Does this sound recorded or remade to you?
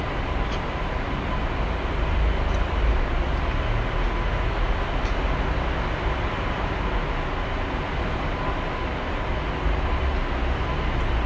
recorded